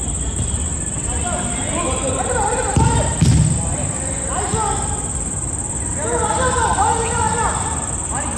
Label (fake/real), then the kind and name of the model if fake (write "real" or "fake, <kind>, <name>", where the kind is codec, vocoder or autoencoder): real